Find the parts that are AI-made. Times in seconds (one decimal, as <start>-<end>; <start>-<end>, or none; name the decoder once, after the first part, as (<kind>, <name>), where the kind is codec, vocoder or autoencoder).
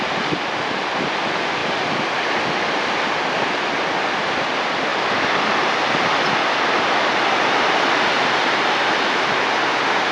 4.9-5.4 (vocoder, BigVGAN v2)